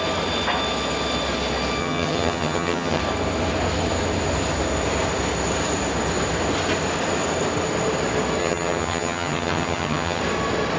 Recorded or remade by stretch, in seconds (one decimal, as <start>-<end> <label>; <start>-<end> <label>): 0.0-1.8 recorded; 1.8-3.0 remade; 3.0-8.4 recorded; 8.4-10.2 remade; 10.2-10.8 recorded